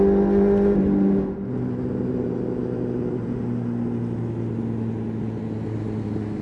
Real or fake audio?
real